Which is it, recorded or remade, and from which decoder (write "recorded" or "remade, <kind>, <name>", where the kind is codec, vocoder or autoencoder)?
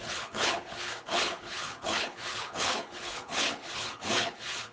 remade, codec, HILCodec